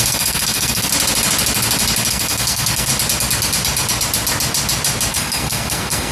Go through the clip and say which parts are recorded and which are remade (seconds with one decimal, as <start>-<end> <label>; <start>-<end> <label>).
0.0-0.9 remade; 0.9-2.1 recorded; 2.1-2.9 remade; 2.9-5.1 recorded; 5.1-6.1 remade